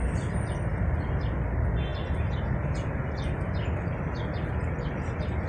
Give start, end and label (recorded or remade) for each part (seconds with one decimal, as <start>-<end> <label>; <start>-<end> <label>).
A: 0.0-5.5 recorded